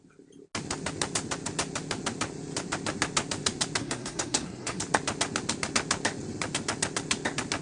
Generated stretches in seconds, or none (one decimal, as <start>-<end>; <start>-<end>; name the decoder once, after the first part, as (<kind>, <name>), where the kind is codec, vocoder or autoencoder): 3.8-4.8 (codec, SNAC)